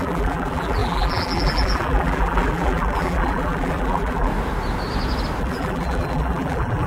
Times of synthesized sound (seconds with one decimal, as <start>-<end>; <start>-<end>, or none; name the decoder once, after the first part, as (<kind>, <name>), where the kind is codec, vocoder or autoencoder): 0.0-4.3 (vocoder, BigVGAN v2); 5.4-6.9